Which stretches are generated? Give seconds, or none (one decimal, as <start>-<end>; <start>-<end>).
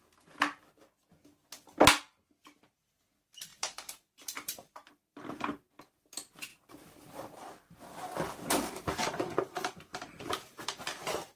3.5-4.9; 6.5-11.0